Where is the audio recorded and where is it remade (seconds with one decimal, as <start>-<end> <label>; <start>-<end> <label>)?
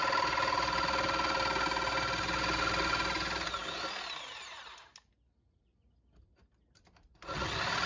0.0-7.9 recorded